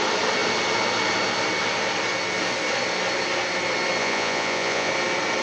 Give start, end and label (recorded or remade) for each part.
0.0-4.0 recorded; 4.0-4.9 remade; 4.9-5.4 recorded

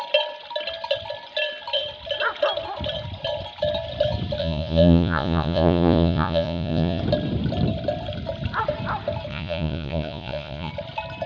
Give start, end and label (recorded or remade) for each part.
0.0-4.4 recorded; 4.4-7.0 remade; 7.0-9.3 recorded; 9.3-10.7 remade; 10.7-11.3 recorded

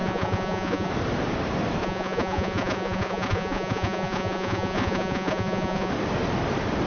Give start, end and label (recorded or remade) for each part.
0.0-0.9 remade; 0.9-1.8 recorded; 1.8-5.9 remade; 5.9-6.9 recorded

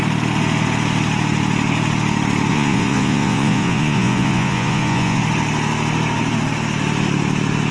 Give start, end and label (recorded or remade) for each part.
0.0-2.5 recorded; 2.5-5.2 remade; 5.2-7.7 recorded